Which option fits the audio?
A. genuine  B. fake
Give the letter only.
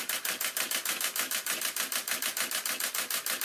A